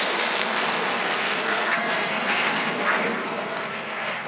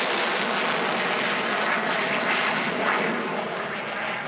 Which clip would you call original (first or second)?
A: second